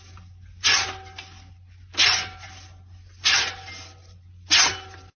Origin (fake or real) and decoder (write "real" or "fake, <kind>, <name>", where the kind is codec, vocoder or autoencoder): real